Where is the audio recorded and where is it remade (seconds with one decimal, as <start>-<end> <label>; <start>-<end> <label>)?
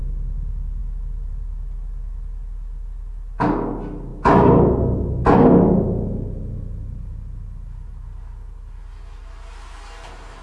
0.0-10.4 recorded